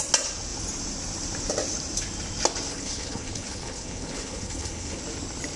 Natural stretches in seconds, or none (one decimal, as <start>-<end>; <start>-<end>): 0.0-2.7; 5.0-5.6